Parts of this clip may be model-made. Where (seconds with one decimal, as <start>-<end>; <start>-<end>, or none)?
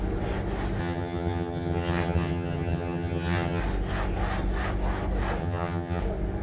0.8-3.6; 5.4-6.0